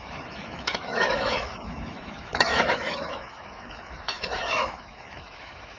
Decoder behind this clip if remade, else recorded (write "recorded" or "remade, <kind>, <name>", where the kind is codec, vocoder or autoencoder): remade, autoencoder, DAC-VAE